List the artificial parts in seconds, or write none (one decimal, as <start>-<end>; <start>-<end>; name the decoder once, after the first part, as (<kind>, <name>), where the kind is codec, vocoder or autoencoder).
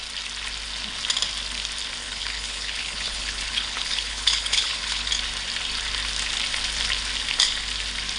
2.0-5.1 (codec, HILCodec)